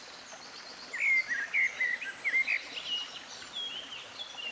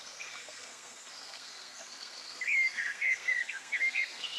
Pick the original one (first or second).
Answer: first